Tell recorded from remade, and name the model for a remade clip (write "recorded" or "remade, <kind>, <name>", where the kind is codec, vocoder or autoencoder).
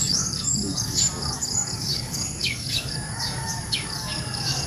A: remade, codec, DAC